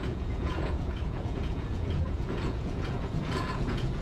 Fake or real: fake